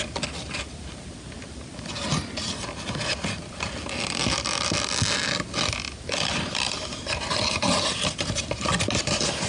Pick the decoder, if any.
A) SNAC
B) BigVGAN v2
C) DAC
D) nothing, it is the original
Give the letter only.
D